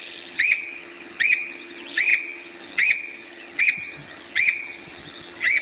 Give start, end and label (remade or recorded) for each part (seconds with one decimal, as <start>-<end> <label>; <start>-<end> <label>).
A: 0.0-5.6 remade